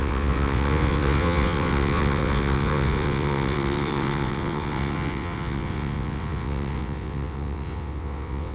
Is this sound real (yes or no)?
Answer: no